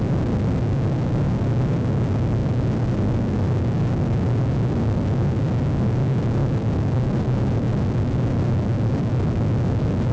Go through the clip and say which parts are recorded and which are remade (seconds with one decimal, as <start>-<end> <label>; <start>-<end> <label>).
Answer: 0.0-10.1 recorded

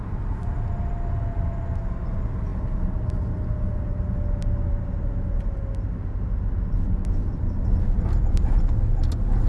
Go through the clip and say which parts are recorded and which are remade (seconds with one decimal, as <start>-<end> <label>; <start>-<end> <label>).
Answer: 0.0-9.5 recorded

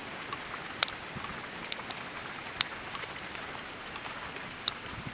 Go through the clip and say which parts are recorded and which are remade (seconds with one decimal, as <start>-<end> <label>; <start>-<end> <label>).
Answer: 0.0-2.1 recorded; 2.1-5.1 remade

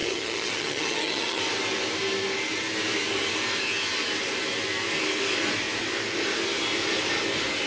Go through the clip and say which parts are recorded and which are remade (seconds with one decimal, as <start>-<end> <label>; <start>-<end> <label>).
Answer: 0.0-1.4 remade; 1.4-7.7 recorded

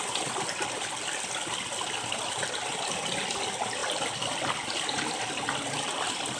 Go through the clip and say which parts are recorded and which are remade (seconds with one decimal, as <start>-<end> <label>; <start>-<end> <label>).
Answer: 0.0-6.4 recorded

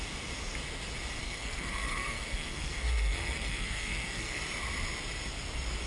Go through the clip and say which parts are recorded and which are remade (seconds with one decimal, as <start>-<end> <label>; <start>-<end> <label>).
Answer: 0.0-1.2 recorded; 1.2-4.4 remade; 4.4-5.9 recorded

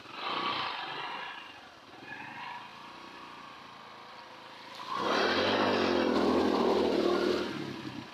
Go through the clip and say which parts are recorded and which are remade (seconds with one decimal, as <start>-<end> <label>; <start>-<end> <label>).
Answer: 0.0-8.1 recorded